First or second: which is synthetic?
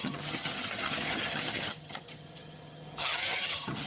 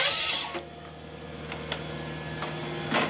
first